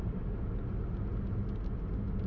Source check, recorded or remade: recorded